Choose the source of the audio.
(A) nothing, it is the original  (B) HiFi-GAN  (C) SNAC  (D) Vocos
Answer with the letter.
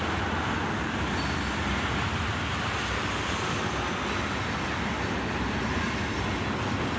A